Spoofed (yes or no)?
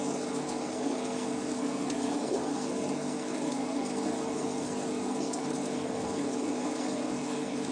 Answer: yes